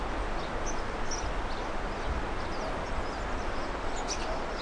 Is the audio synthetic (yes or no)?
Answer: no